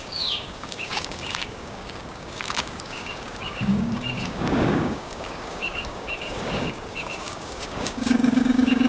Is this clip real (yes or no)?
no